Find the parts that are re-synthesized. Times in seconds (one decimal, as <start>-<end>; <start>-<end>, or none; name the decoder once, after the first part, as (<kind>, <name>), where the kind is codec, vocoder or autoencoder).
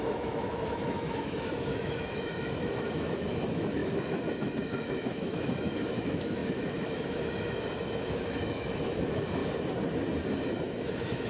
0.0-9.4 (autoencoder, DAC-VAE); 10.6-11.3